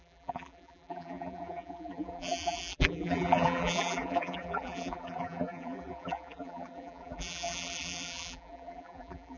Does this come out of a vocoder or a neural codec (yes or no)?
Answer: yes